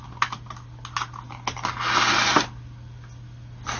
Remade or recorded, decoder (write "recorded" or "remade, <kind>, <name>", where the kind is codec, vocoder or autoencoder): recorded